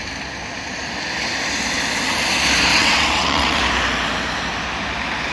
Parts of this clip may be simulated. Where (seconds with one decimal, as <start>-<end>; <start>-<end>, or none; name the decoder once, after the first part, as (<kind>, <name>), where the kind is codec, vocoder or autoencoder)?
2.7-3.6 (vocoder, WaveNeXt)